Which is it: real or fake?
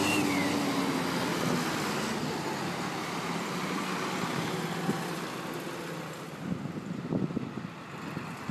real